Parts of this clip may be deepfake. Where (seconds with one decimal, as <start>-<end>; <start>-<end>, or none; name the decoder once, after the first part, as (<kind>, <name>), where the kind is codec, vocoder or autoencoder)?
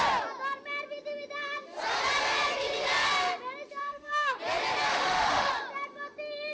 3.8-4.4 (autoencoder, DAC-VAE); 4.9-5.5